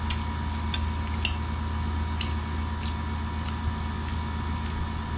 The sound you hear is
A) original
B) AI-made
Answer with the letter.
A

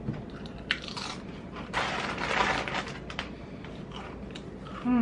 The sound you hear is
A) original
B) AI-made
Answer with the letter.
B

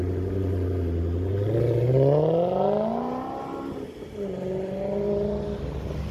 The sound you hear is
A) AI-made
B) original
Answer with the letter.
B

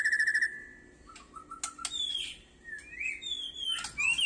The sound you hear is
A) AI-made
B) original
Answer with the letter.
B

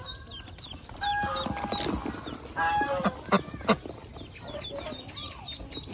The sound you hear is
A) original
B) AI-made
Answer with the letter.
A